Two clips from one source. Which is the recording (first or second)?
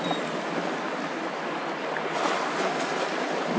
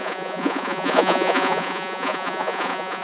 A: first